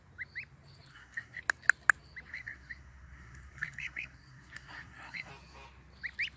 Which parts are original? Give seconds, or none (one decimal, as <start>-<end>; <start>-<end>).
0.0-0.9; 1.4-2.3; 5.3-6.4